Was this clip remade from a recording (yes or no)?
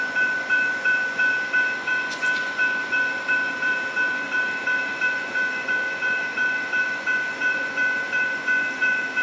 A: yes